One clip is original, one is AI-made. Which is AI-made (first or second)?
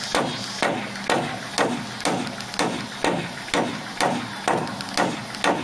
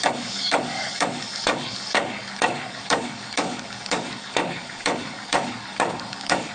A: second